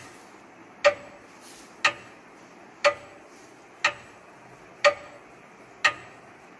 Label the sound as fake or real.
real